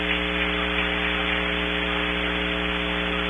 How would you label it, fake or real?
real